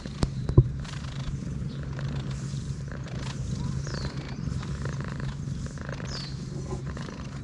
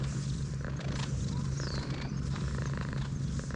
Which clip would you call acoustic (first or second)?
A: second